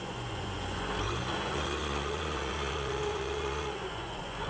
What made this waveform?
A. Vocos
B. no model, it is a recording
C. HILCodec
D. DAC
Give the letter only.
A